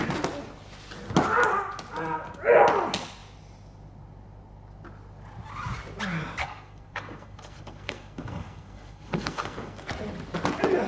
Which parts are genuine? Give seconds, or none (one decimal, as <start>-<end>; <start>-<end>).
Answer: 0.0-6.4; 9.9-10.9